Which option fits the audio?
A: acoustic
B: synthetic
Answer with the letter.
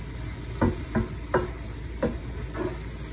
A